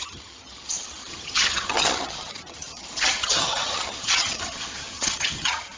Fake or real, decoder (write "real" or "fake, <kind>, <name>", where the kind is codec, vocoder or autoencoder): fake, vocoder, HiFi-GAN